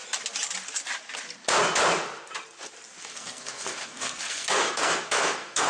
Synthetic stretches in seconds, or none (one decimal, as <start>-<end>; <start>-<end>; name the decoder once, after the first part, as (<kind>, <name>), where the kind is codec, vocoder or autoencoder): 3.0-5.7 (codec, SNAC)